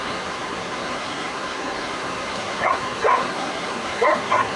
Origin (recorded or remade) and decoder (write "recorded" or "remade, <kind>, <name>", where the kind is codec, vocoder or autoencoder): remade, codec, SNAC